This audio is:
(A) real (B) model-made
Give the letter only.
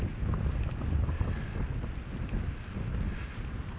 A